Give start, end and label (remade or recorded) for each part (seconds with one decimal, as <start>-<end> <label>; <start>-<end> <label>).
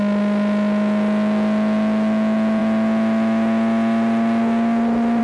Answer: 0.0-5.2 recorded